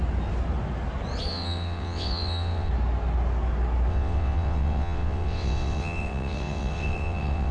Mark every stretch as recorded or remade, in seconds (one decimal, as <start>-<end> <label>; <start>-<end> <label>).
0.0-1.3 recorded; 1.3-2.7 remade; 2.7-3.9 recorded; 3.9-7.5 remade